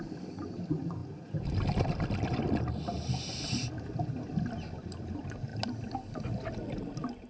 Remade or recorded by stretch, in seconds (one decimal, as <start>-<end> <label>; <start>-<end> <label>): 0.0-7.3 recorded